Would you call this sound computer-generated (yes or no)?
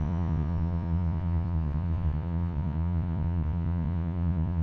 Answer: yes